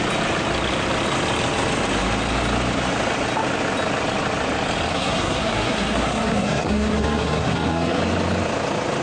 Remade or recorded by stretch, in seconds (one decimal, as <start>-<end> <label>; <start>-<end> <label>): 0.0-4.9 recorded; 4.9-8.0 remade; 8.0-9.0 recorded